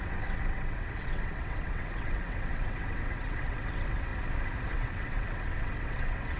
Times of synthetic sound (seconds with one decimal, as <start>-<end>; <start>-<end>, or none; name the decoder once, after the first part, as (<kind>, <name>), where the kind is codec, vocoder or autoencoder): 0.0-4.1 (vocoder, WaveNeXt); 4.7-6.4